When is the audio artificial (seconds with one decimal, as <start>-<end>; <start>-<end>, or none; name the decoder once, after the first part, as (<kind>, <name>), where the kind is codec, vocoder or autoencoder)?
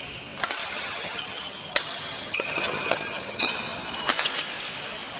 0.6-3.5 (vocoder, HiFi-GAN)